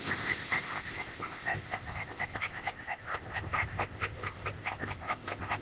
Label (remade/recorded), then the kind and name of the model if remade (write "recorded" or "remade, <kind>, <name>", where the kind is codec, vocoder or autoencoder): remade, codec, ZipCodec